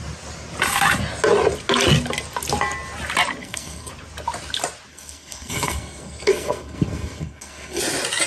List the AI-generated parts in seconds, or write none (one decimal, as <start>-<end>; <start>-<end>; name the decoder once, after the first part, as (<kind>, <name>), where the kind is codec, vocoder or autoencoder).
3.4-3.9 (codec, SNAC); 4.9-7.8

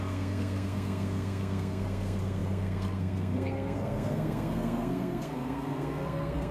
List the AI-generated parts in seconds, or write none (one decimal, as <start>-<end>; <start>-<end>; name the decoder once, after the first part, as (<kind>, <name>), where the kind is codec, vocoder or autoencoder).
0.0-6.5 (codec, SNAC)

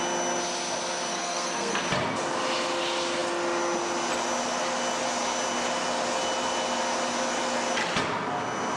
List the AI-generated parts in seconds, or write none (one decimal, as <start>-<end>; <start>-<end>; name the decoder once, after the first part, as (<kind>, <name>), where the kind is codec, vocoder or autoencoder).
1.1-1.8 (codec, SNAC)